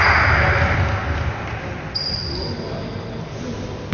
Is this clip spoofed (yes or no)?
no